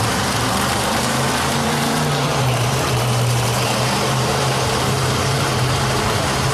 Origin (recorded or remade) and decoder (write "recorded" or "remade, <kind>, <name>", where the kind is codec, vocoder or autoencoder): remade, vocoder, BigVGAN v2